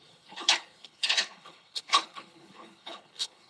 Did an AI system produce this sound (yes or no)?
yes